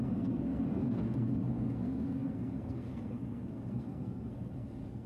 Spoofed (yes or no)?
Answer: yes